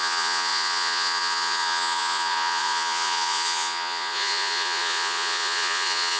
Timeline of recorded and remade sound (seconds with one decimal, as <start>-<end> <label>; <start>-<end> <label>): 0.0-6.2 remade